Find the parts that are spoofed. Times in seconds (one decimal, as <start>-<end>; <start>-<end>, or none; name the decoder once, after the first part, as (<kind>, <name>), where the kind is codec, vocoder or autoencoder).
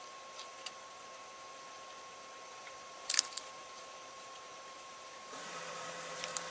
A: 0.5-1.3 (vocoder, BigVGAN v2); 2.5-5.6